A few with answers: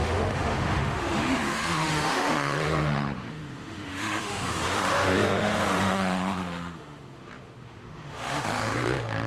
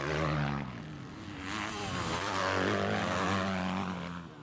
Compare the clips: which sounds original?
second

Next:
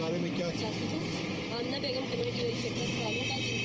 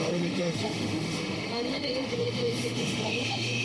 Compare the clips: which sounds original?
first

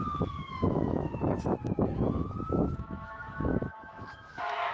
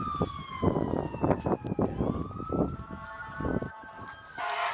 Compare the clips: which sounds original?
second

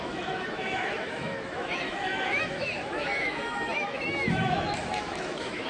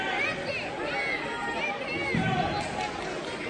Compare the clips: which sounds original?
second